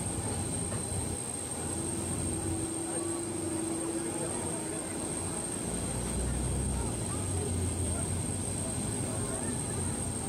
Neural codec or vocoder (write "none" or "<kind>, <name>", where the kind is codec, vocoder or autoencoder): none